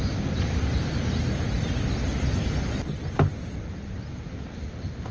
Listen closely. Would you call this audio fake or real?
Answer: real